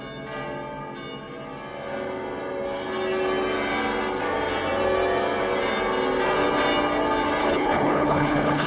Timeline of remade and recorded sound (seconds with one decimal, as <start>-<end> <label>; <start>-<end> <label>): 0.0-7.4 recorded; 7.4-8.7 remade